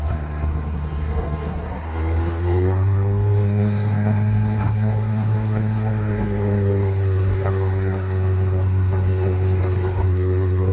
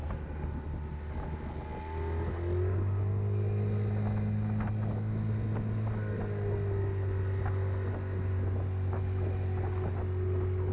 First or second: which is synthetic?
first